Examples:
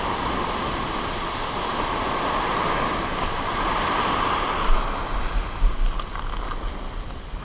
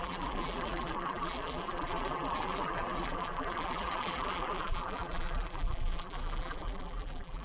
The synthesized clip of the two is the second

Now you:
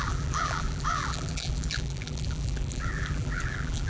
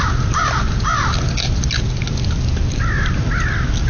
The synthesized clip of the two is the first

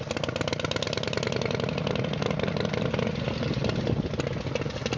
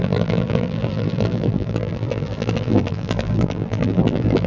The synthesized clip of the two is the second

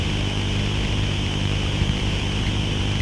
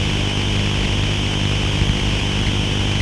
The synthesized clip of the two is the first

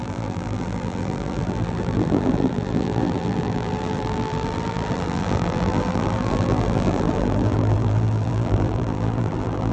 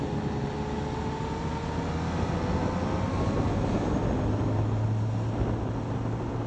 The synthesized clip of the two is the first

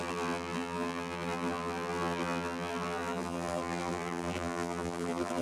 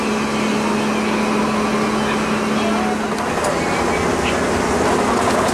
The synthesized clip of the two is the first